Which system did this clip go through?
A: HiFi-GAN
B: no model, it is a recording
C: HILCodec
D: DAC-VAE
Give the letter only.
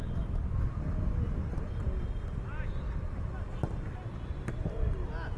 B